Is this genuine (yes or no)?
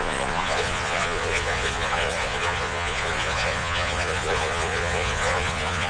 no